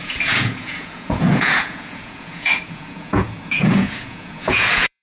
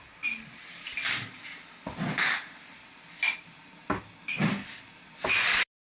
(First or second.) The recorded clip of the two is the second